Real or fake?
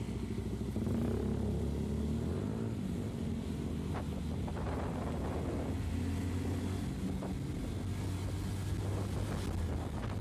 real